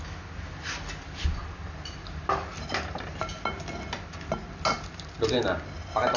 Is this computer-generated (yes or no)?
no